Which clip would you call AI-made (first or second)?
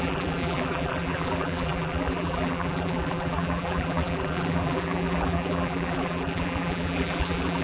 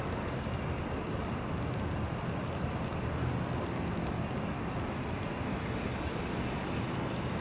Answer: first